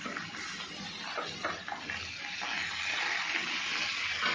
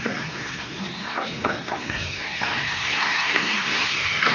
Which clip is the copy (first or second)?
second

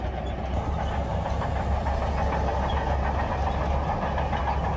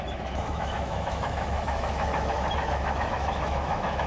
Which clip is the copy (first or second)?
second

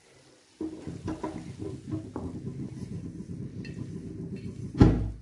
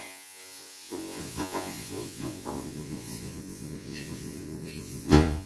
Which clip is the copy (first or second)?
second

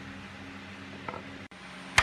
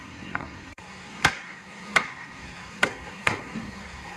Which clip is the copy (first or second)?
second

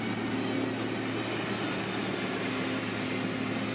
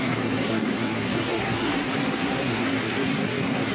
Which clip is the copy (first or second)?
second